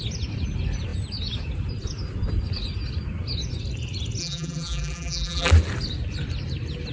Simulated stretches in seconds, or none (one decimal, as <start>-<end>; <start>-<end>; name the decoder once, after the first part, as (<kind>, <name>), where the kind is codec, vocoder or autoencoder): 4.2-5.5 (vocoder, BigVGAN v2)